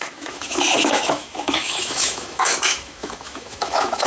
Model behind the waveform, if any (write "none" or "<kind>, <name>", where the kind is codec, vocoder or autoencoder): autoencoder, DAC-VAE